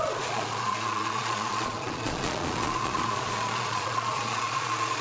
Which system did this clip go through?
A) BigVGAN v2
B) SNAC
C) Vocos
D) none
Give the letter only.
C